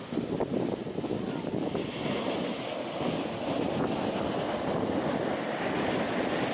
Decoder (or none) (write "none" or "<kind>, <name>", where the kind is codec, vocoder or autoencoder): none